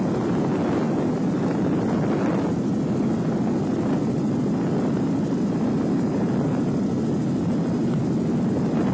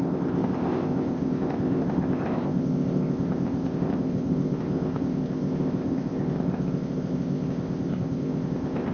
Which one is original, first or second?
first